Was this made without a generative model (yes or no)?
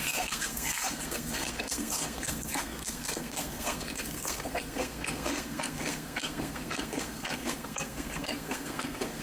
no